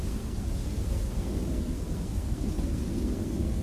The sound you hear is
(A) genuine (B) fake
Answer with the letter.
B